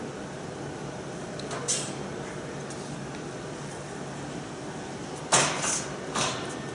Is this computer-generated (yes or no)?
no